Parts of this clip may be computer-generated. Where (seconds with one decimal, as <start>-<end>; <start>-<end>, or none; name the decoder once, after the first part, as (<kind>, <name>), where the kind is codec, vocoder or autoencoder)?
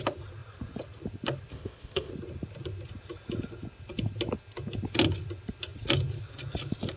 1.5-2.1 (codec, ZipCodec)